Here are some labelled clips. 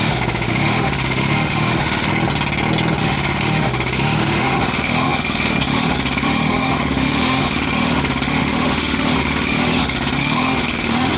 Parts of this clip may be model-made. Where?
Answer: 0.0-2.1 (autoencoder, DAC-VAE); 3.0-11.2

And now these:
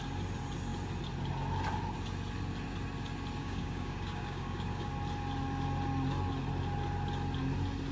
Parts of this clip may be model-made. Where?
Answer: 3.4-4.9 (codec, DAC)